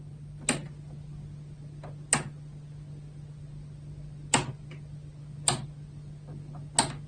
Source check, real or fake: real